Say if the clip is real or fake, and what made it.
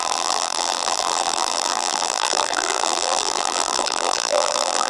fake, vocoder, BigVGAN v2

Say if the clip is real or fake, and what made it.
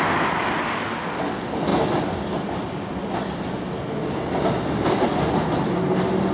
real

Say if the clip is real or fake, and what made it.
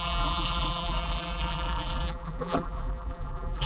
fake, vocoder, BigVGAN v2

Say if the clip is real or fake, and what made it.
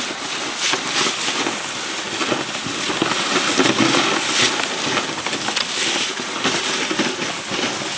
real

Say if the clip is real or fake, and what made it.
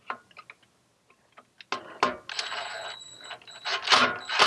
real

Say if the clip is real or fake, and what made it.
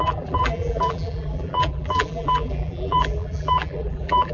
fake, vocoder, BigVGAN v2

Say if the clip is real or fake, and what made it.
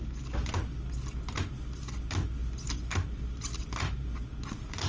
real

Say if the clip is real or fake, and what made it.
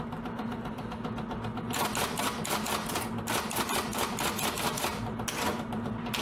real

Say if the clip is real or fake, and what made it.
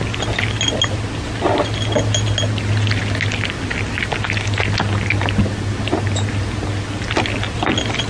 real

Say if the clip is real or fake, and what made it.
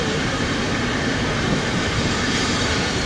fake, vocoder, BigVGAN v2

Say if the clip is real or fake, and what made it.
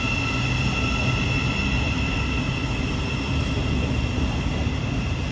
real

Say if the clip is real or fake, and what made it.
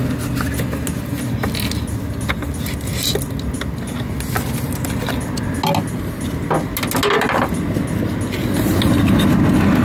real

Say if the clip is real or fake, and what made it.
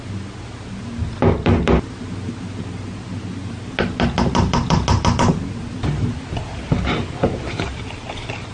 real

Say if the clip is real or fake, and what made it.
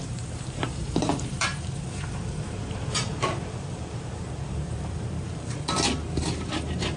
fake, vocoder, BigVGAN v2